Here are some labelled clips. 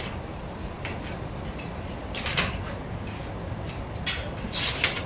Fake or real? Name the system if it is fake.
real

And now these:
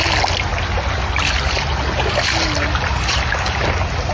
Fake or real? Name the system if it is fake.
real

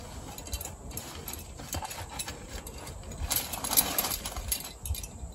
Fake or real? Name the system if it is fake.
real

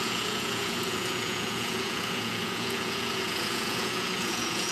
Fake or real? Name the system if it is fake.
fake, vocoder, Vocos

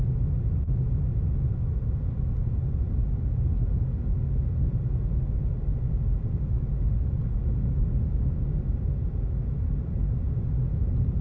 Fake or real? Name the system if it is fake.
real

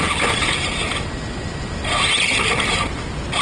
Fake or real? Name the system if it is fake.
real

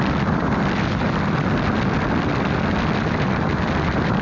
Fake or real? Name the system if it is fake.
real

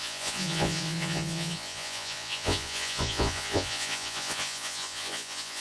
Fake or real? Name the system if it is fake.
fake, vocoder, Vocos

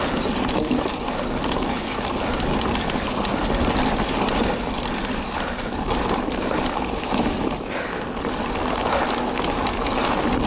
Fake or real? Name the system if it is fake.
real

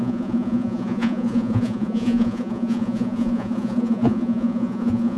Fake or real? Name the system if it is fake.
fake, vocoder, Vocos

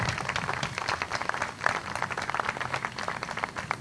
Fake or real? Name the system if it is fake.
real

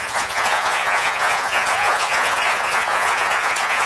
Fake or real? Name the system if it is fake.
fake, vocoder, Vocos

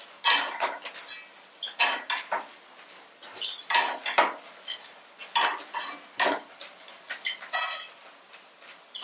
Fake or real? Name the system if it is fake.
real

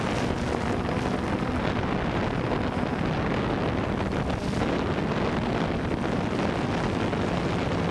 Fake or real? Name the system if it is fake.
real